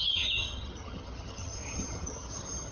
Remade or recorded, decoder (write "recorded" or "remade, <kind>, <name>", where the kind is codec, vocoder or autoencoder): remade, vocoder, HiFi-GAN